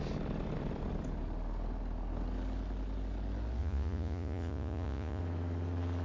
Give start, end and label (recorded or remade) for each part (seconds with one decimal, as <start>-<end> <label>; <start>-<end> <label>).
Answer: 0.0-3.6 recorded; 3.6-5.2 remade; 5.2-6.0 recorded